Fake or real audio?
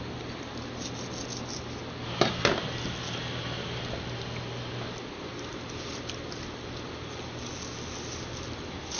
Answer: real